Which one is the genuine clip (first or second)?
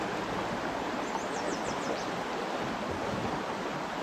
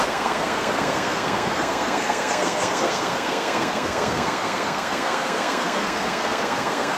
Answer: first